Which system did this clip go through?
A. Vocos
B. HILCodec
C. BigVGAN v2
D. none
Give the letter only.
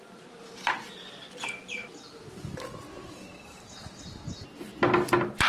D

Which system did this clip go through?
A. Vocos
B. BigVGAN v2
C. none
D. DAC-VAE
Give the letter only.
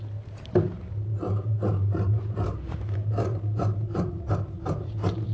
B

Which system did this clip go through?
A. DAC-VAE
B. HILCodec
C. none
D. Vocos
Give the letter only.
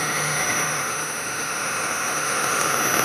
A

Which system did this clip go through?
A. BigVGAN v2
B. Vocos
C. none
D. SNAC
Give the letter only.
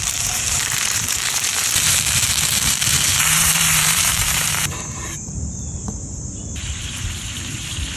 A